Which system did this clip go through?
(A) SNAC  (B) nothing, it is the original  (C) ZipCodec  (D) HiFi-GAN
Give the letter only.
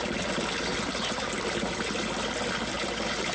B